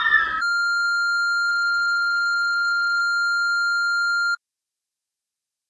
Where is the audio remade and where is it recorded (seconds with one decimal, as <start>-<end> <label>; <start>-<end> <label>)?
0.0-1.5 recorded; 1.5-3.0 remade; 3.0-5.7 recorded